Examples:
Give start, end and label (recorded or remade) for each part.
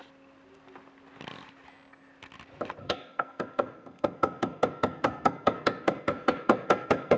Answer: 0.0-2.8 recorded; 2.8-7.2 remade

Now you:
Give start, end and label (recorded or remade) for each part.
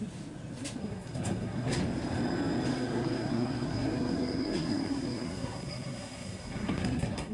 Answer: 0.0-0.8 recorded; 0.8-1.8 remade; 1.8-2.7 recorded; 2.7-7.3 remade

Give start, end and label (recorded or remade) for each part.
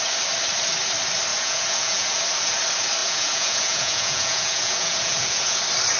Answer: 0.0-1.3 recorded; 1.3-2.2 remade; 2.2-3.0 recorded; 3.0-5.6 remade; 5.6-6.0 recorded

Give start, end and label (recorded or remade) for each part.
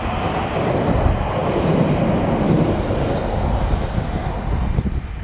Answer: 0.0-5.2 recorded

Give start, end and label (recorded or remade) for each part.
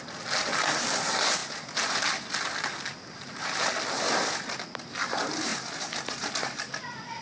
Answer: 0.0-7.2 recorded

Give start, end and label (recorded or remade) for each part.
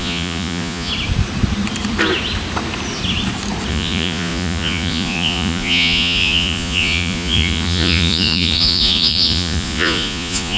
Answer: 0.0-0.9 remade; 0.9-3.7 recorded; 3.7-10.6 remade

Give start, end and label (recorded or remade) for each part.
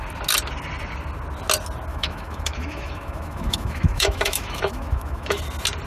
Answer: 0.0-1.9 recorded; 1.9-5.4 remade; 5.4-5.9 recorded